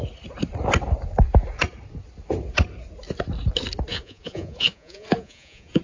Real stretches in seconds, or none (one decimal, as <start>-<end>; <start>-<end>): 0.0-3.9